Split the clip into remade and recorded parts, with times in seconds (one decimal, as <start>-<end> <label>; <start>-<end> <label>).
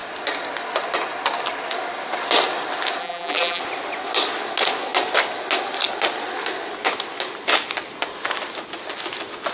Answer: 0.0-3.0 recorded; 3.0-3.6 remade; 3.6-9.5 recorded